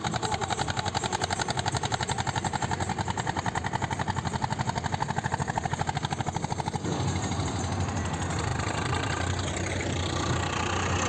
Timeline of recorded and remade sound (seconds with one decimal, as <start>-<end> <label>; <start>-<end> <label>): 0.0-11.1 recorded